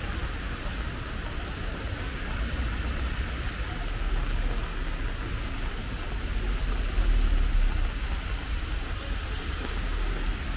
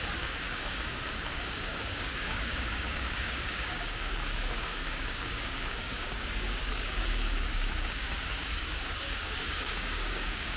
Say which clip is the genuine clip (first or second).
first